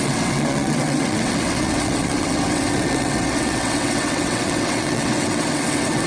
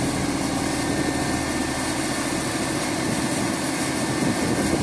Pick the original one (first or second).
second